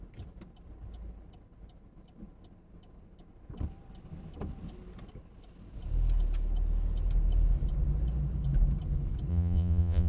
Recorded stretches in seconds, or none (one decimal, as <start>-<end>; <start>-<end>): 0.0-9.3

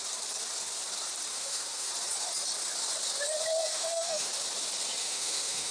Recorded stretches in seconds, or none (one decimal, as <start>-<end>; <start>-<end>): 0.0-1.3; 1.9-3.7; 4.3-5.0

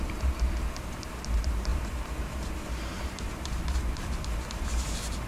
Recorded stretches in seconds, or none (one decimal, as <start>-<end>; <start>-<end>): none

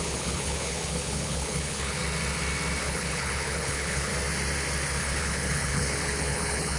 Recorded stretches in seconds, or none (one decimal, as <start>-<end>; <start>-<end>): 2.0-2.8; 4.1-5.0

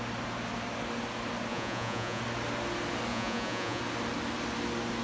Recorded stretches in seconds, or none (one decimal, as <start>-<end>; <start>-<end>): 0.0-1.5; 2.2-3.1; 3.8-5.0

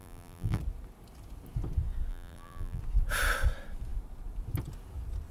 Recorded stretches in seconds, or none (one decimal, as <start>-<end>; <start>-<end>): 0.6-2.1; 2.8-5.3

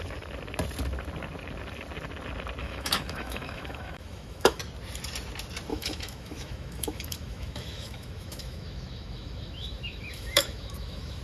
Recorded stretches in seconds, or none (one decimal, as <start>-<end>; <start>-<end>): 0.0-2.6; 4.6-5.7

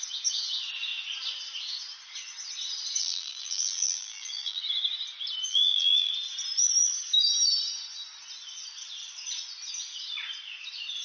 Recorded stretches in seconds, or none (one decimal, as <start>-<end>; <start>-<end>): 0.0-3.0; 4.6-5.5; 6.1-11.0